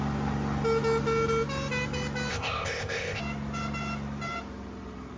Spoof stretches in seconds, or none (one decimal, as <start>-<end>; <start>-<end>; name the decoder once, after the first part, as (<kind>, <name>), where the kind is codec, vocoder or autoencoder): 2.3-3.2 (codec, ZipCodec)